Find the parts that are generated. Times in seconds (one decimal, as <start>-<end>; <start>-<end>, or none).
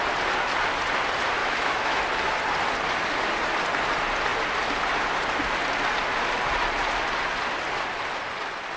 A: 1.4-2.0